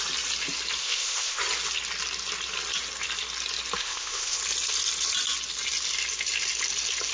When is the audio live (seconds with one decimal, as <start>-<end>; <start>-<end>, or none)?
0.0-0.8; 1.4-3.8; 4.4-7.1